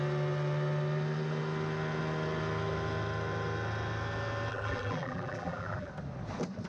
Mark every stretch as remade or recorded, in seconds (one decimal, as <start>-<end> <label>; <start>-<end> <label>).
0.0-4.5 recorded; 4.5-5.9 remade; 5.9-6.7 recorded